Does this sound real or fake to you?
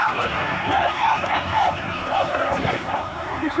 fake